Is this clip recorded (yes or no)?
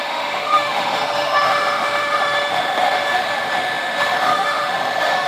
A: no